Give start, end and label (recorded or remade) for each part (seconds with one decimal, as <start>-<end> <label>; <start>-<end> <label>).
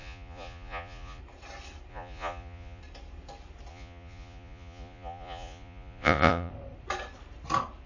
0.0-1.2 remade; 1.2-1.9 recorded; 1.9-2.8 remade; 2.8-3.7 recorded; 3.7-6.5 remade; 6.5-7.9 recorded